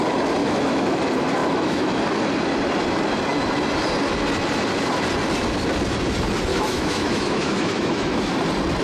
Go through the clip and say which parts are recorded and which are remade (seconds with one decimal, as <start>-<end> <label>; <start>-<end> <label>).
0.0-0.4 recorded; 0.4-1.0 remade; 1.0-1.4 recorded; 1.4-2.0 remade; 2.0-6.5 recorded; 6.5-8.3 remade; 8.3-8.8 recorded